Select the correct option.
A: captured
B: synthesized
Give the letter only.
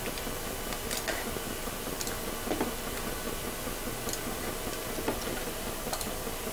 A